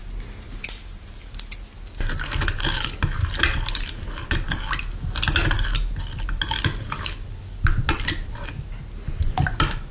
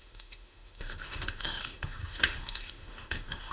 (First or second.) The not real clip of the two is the second